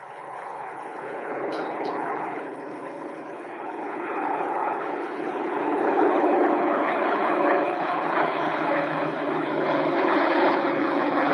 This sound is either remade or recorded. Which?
remade